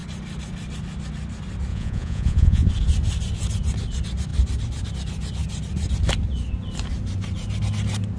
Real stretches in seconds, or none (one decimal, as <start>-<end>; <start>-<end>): 0.0-1.7; 2.7-8.2